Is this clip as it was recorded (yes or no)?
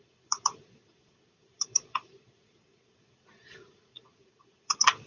no